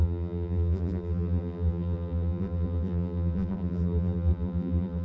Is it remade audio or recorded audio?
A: remade